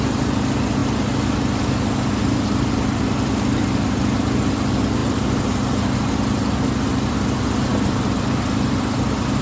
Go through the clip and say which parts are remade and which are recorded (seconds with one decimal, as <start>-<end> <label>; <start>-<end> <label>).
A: 0.0-9.4 recorded